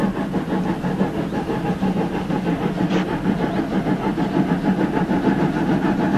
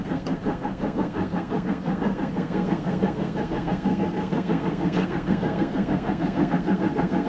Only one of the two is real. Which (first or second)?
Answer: first